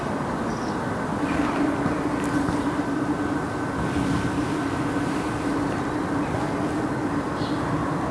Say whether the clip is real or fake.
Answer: real